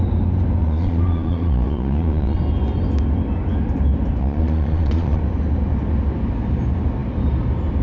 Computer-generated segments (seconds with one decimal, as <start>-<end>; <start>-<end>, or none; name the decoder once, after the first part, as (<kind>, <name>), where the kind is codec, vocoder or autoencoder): 0.6-2.4 (vocoder, Vocos); 4.2-5.2